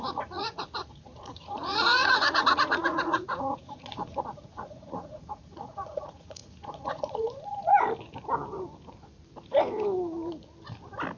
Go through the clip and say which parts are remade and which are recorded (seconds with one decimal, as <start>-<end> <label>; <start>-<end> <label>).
0.0-7.7 remade; 7.7-11.2 recorded